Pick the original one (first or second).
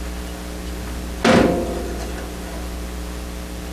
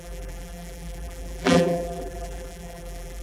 first